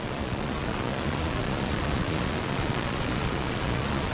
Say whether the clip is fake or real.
fake